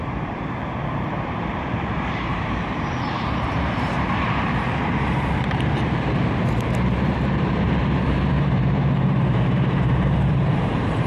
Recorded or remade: remade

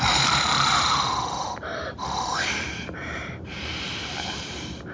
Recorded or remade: remade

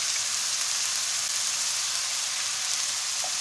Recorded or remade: recorded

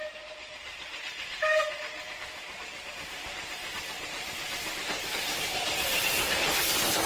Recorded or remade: remade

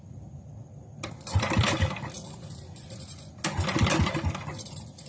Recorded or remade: recorded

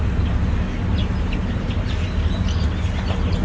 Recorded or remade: recorded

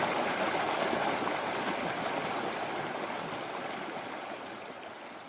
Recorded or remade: recorded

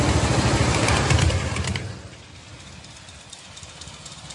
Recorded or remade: recorded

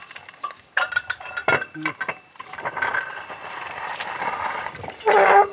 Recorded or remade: recorded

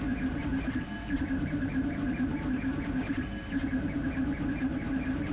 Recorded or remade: remade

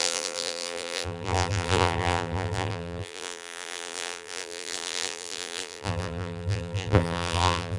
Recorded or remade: remade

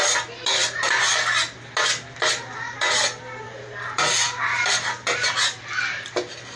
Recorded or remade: recorded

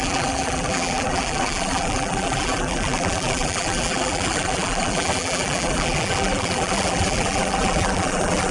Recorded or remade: remade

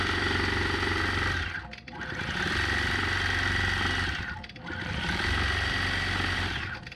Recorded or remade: recorded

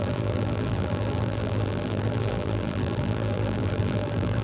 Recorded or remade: remade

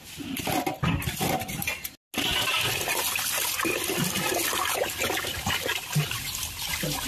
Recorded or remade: recorded